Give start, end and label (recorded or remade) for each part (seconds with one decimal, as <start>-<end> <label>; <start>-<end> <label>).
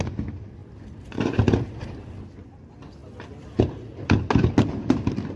0.0-0.6 recorded; 0.6-1.7 remade; 1.7-5.4 recorded